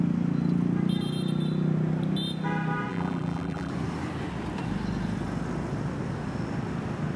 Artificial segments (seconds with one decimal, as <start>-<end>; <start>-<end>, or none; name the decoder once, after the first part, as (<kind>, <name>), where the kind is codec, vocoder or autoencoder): 2.9-3.7 (vocoder, BigVGAN v2)